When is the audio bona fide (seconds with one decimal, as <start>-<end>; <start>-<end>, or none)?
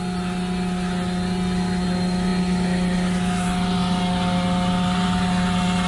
0.0-5.9